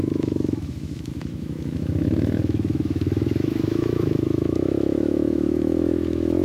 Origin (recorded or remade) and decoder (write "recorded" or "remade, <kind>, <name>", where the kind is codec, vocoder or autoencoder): remade, autoencoder, DAC-VAE